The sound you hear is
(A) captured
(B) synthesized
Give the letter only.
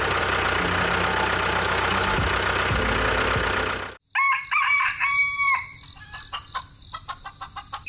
A